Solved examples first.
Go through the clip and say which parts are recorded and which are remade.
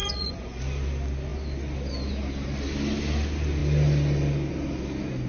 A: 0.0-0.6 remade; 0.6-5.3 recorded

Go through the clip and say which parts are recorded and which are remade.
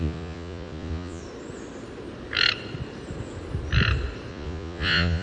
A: 0.0-1.2 remade; 1.2-4.3 recorded; 4.3-5.2 remade